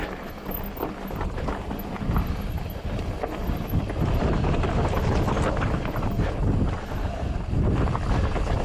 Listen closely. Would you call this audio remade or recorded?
recorded